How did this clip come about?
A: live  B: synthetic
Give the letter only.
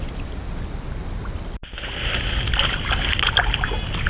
A